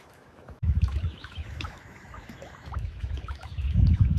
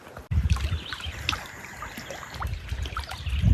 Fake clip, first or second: first